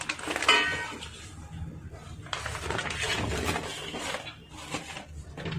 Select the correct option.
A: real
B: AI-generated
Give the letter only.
A